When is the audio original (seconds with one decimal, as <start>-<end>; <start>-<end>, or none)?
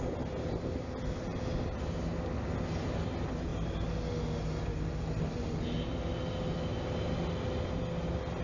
0.0-8.4